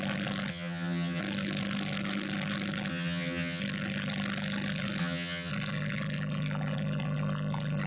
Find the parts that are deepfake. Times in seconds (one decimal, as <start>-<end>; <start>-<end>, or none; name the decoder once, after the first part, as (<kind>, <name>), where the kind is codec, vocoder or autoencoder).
0.5-1.2 (vocoder, HiFi-GAN); 2.9-3.6; 5.0-5.5